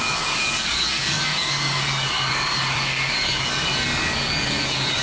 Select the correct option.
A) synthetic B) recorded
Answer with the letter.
A